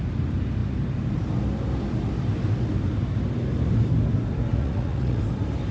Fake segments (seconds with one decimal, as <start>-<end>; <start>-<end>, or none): 4.5-5.2